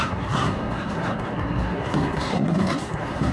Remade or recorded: remade